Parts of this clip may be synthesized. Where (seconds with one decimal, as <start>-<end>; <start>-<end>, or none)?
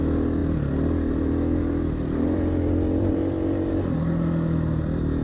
none